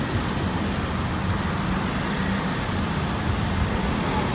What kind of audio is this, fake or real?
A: real